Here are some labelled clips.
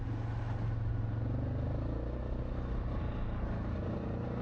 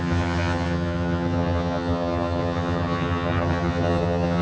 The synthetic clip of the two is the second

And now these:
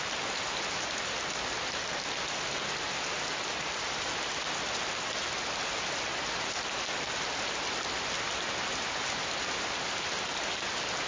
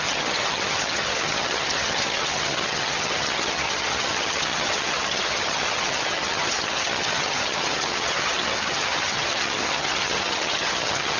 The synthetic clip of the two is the second